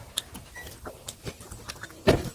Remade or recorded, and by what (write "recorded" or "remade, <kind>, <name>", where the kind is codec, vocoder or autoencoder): remade, vocoder, BigVGAN v2